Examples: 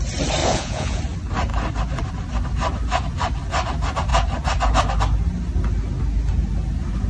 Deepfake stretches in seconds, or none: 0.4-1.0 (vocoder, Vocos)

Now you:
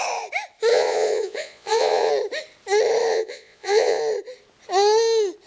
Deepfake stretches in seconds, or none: 0.7-2.1 (vocoder, Vocos); 3.1-4.0

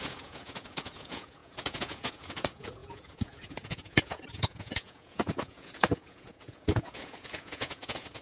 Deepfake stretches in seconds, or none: 0.0-8.2 (vocoder, Vocos)

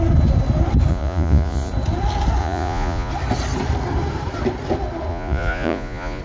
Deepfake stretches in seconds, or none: 0.9-1.7 (vocoder, Vocos); 2.4-3.1; 5.1-6.2